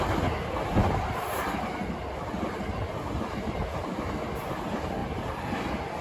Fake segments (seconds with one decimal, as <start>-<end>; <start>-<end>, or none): none